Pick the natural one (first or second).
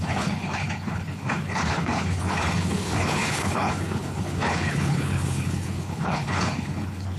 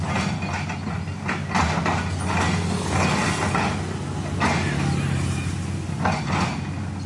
second